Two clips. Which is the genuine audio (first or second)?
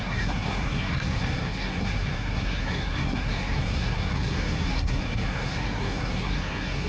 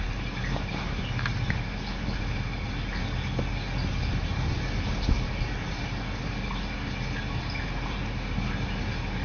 second